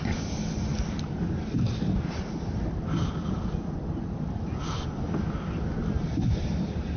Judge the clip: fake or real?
real